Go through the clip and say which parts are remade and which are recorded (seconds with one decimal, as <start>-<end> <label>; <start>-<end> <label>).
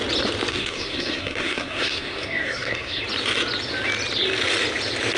0.0-0.5 recorded; 0.5-3.0 remade; 3.0-5.2 recorded